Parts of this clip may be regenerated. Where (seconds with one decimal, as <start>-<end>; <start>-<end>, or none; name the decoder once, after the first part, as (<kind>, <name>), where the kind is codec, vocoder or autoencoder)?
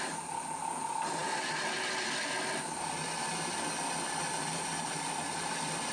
none